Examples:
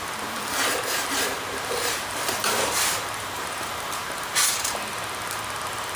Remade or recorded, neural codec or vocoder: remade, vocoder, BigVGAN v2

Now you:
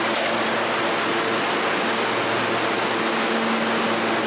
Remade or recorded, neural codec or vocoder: recorded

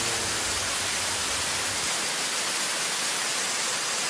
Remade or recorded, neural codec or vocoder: recorded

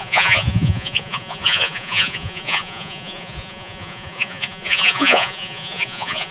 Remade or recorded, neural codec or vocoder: remade, vocoder, Vocos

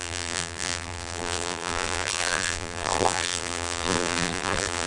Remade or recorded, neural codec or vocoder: remade, vocoder, BigVGAN v2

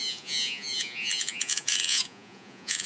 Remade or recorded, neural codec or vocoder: remade, vocoder, Vocos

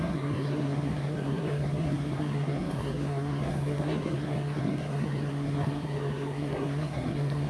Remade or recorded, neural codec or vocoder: remade, codec, SNAC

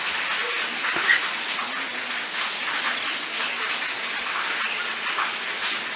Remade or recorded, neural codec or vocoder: recorded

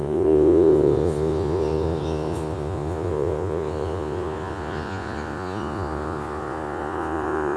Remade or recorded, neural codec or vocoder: remade, vocoder, Vocos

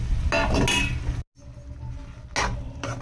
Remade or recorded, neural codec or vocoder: recorded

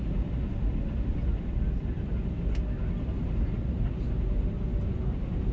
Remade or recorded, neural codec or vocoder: recorded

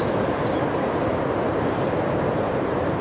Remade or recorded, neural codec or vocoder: remade, vocoder, BigVGAN v2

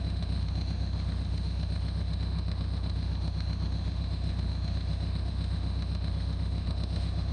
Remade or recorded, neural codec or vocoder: remade, autoencoder, DAC-VAE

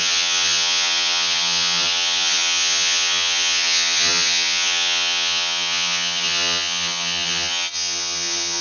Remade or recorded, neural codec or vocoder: remade, vocoder, HiFi-GAN